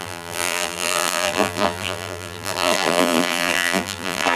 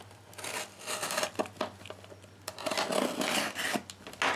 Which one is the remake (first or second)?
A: first